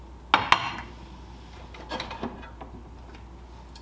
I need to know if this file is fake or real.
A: real